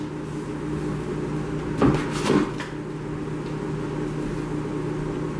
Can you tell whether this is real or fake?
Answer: real